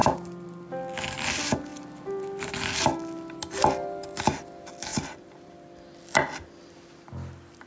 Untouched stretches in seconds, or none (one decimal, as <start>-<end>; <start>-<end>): 0.7-1.7; 2.5-4.9; 5.5-7.7